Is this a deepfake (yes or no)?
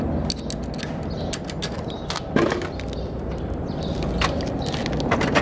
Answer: no